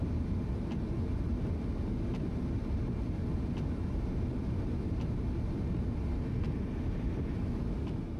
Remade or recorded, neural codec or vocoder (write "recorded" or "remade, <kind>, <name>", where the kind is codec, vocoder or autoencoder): recorded